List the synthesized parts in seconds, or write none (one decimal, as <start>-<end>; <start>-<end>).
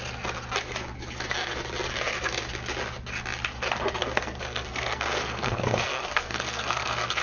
4.0-7.2